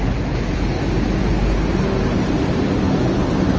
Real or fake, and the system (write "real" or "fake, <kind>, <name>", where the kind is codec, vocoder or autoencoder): real